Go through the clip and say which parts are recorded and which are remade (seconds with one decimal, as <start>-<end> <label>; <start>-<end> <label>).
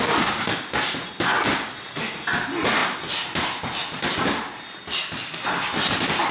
0.0-2.8 recorded; 2.8-3.6 remade; 3.6-6.3 recorded